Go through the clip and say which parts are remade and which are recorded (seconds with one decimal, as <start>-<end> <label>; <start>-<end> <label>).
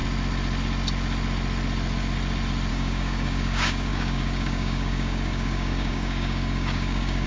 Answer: 0.0-2.7 recorded; 2.7-7.3 remade